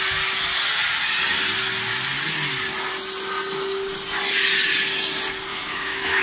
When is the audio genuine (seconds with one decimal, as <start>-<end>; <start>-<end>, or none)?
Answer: 0.0-5.5

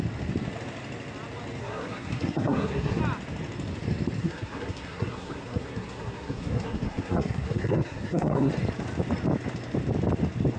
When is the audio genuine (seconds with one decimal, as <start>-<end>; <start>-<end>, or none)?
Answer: 0.0-1.6; 3.0-4.2; 8.5-10.6